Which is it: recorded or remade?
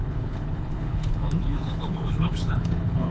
remade